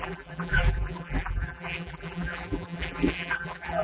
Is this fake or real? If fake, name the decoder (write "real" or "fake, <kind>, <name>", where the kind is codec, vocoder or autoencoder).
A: fake, vocoder, BigVGAN v2